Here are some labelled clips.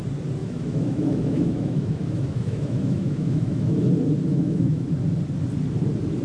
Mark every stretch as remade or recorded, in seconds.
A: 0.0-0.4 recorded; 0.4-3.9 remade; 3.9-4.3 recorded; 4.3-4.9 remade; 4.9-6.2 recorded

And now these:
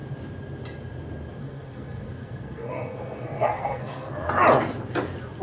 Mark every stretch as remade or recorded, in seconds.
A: 0.0-1.4 recorded; 1.4-4.1 remade; 4.1-5.4 recorded

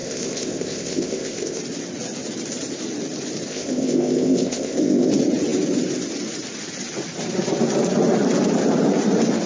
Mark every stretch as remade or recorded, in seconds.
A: 0.0-1.6 remade; 1.6-3.5 recorded; 3.5-5.1 remade; 5.1-9.5 recorded

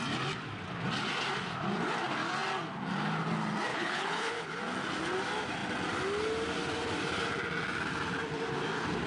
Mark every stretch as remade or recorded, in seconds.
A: 0.0-3.7 recorded; 3.7-4.6 remade; 4.6-9.1 recorded

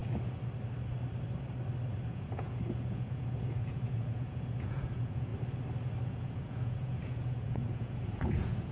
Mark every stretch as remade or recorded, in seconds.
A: 0.0-2.1 recorded; 2.1-5.3 remade; 5.3-6.1 recorded; 6.1-8.7 remade

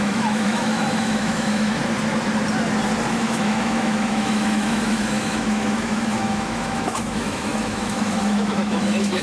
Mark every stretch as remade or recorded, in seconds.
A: 0.0-1.8 remade; 1.8-3.1 recorded; 3.1-9.2 remade

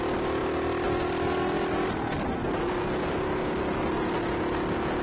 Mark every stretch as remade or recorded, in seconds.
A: 0.0-5.0 recorded